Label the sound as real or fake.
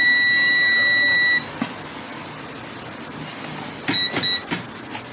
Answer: real